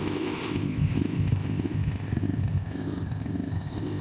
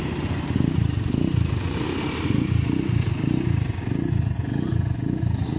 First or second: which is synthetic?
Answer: first